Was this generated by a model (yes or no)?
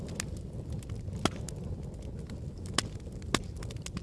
no